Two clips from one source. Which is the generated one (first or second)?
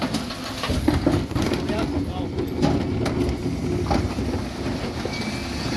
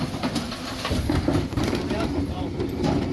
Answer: second